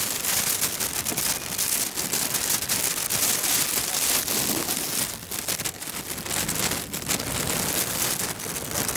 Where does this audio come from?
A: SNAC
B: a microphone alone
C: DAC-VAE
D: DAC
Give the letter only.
B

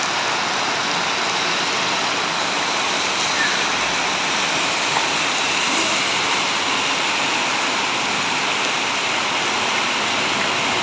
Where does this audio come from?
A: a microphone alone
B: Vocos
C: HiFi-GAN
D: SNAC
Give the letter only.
A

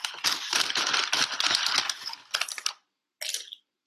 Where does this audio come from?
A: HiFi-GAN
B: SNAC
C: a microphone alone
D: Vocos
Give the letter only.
C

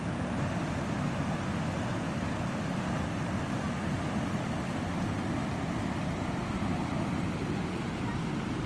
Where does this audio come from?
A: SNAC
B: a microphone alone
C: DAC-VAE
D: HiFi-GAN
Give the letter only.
B